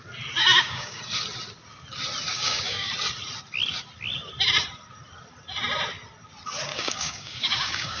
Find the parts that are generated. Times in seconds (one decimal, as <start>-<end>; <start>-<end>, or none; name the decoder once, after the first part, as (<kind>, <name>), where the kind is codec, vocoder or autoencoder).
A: 0.4-1.0 (codec, DAC); 2.3-2.9; 6.7-8.0